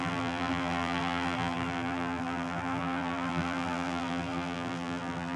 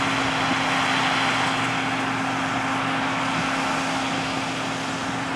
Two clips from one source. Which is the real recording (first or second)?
second